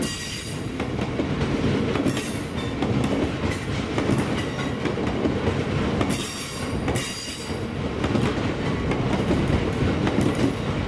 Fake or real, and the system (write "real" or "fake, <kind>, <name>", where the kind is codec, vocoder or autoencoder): real